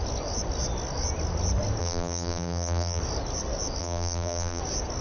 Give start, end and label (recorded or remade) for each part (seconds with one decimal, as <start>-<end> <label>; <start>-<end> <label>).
0.0-1.8 recorded; 1.8-3.0 remade; 3.0-3.8 recorded; 3.8-4.6 remade; 4.6-5.0 recorded